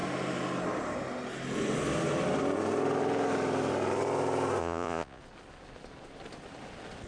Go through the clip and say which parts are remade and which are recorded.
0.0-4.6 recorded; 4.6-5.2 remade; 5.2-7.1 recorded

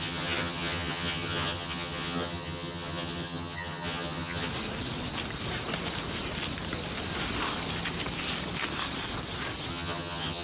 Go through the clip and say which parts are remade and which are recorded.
0.0-4.5 remade; 4.5-9.7 recorded; 9.7-10.4 remade

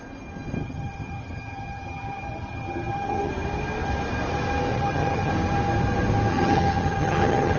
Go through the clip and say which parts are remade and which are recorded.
0.0-0.6 recorded; 0.6-3.3 remade; 3.3-4.7 recorded; 4.7-5.3 remade; 5.3-6.3 recorded; 6.3-7.6 remade

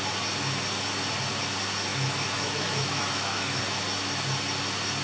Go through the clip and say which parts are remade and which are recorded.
0.0-1.9 recorded; 1.9-3.6 remade; 3.6-5.0 recorded

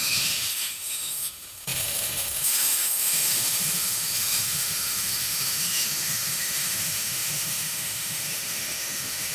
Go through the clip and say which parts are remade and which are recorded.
0.0-9.3 remade

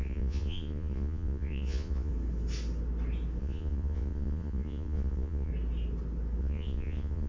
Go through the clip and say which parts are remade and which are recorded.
0.0-2.1 remade; 2.1-3.4 recorded; 3.4-5.5 remade; 5.5-6.4 recorded; 6.4-7.3 remade

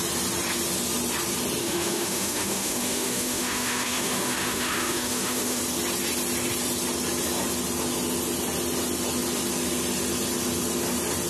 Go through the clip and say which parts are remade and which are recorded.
0.0-1.6 recorded; 1.6-5.6 remade; 5.6-11.3 recorded

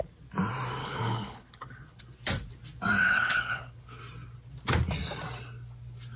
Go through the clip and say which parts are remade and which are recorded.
0.0-0.8 recorded; 0.8-2.0 remade; 2.0-3.0 recorded; 3.0-4.0 remade; 4.0-6.2 recorded